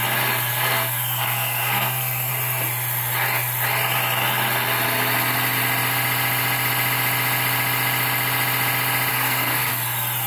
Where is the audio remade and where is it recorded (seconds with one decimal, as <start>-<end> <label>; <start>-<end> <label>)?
0.0-0.5 recorded; 0.5-2.3 remade; 2.3-9.1 recorded; 9.1-9.7 remade; 9.7-10.3 recorded